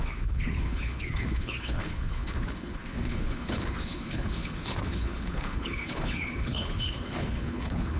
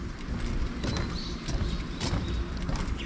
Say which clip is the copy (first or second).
first